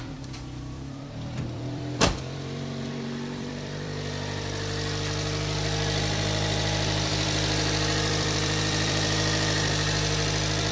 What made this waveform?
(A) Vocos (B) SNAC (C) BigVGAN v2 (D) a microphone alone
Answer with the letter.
C